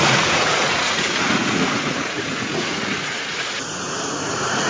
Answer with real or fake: fake